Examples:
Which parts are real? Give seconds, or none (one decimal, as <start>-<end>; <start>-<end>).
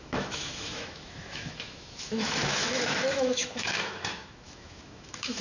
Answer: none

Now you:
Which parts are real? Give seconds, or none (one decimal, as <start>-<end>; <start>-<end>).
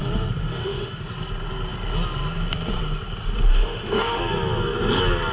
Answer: 0.0-0.4; 1.0-3.5; 4.2-5.3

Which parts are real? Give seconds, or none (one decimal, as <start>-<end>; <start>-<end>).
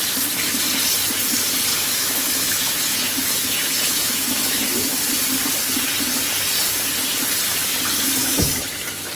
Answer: 0.0-1.7; 5.0-8.2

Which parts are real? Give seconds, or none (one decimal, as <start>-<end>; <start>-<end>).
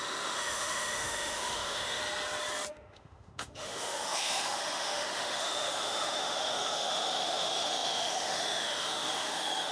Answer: 2.0-2.7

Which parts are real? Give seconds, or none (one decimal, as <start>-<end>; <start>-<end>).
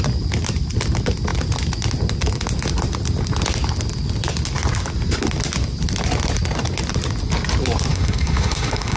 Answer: 0.0-7.9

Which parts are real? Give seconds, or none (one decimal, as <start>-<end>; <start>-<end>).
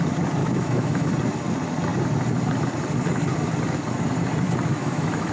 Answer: 0.0-0.4; 1.1-4.7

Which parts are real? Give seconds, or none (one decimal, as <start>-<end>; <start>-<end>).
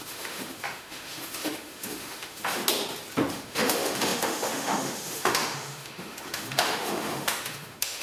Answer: 2.6-3.3